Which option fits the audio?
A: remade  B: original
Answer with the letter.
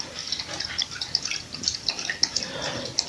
B